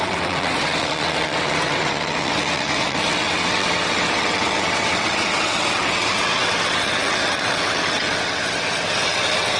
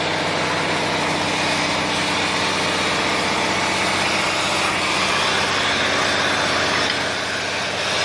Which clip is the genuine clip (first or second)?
second